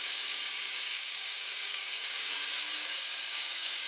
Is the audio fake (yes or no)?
yes